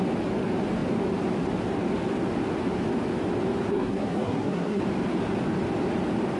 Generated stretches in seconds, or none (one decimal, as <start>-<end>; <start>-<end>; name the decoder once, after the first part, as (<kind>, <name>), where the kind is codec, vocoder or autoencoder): 3.7-4.8 (codec, SNAC)